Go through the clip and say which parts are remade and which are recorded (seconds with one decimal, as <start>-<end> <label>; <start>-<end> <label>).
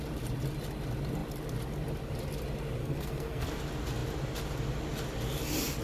0.0-2.8 recorded; 2.8-3.5 remade; 3.5-5.8 recorded